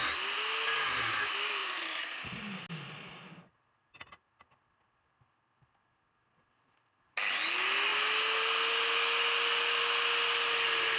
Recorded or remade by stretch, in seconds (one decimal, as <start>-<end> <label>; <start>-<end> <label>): 0.0-11.0 recorded